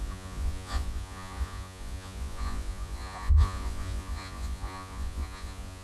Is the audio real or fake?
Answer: fake